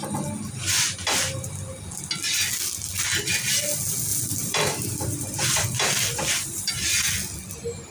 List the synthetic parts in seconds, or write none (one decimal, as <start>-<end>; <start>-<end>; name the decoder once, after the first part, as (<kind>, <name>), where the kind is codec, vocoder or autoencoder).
4.1-6.7 (vocoder, BigVGAN v2)

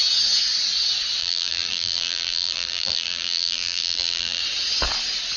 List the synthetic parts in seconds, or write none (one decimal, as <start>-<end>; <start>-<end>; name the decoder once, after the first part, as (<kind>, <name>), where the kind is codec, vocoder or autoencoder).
1.2-4.4 (vocoder, BigVGAN v2)

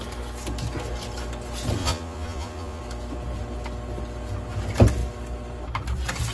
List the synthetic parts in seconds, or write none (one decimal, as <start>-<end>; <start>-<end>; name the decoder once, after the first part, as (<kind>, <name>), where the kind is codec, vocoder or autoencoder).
1.8-2.8 (vocoder, Vocos)

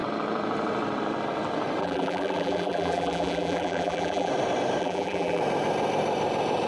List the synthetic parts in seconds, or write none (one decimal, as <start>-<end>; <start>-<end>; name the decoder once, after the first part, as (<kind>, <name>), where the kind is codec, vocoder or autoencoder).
1.8-4.3 (vocoder, BigVGAN v2); 4.8-5.4

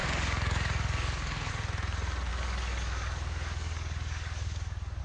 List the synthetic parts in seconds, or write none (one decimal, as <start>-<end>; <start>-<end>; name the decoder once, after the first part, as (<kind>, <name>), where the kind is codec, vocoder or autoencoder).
0.0-1.5 (codec, DAC); 2.3-5.0

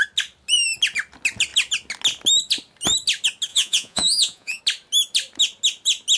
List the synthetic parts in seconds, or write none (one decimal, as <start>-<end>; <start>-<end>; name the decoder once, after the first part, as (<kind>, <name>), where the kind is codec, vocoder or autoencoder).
3.5-4.6 (vocoder, Vocos)